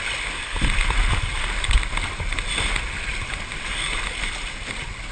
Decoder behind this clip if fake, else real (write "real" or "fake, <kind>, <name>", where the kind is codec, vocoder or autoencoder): real